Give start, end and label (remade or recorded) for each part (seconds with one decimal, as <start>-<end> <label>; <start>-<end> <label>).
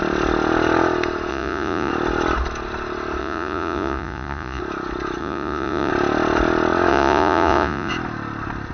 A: 0.0-1.3 recorded; 1.3-1.9 remade; 1.9-3.2 recorded; 3.2-4.6 remade; 4.6-5.2 recorded; 5.2-5.9 remade; 5.9-6.9 recorded; 6.9-7.9 remade; 7.9-8.7 recorded